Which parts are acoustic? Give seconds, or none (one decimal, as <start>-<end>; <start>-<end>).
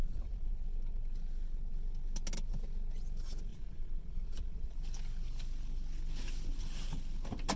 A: 0.5-3.5; 4.8-7.6